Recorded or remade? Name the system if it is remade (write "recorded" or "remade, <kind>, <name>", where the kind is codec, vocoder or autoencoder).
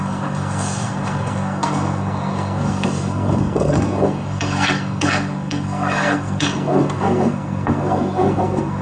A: remade, codec, SNAC